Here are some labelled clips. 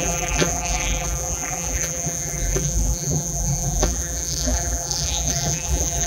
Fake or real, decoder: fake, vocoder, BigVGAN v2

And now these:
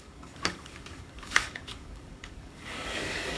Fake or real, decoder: fake, codec, DAC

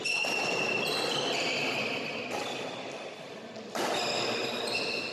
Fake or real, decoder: real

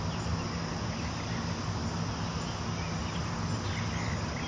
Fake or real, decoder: real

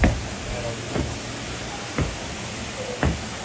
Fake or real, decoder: real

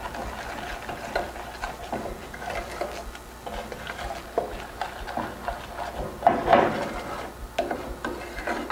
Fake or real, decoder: real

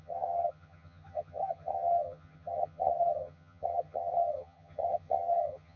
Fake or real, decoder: fake, vocoder, HiFi-GAN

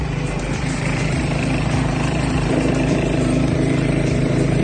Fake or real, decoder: fake, vocoder, BigVGAN v2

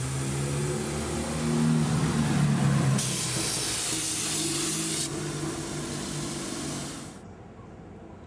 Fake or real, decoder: real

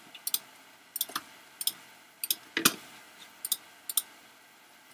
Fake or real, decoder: real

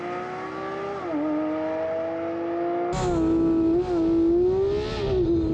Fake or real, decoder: real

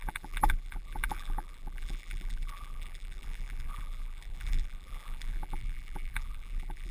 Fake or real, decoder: fake, vocoder, BigVGAN v2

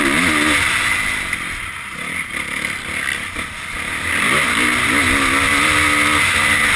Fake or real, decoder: real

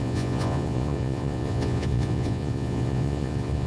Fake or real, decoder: fake, vocoder, Vocos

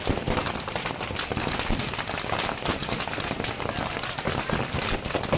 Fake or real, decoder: real